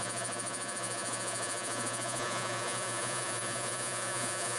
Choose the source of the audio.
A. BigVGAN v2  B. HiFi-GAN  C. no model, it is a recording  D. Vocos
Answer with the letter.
D